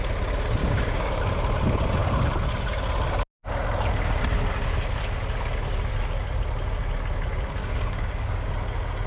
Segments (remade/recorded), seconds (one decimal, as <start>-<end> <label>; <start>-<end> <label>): 0.0-0.6 recorded; 0.6-1.2 remade; 1.2-7.6 recorded; 7.6-8.5 remade; 8.5-9.1 recorded